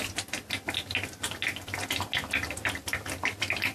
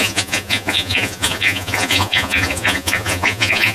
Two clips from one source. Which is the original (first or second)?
first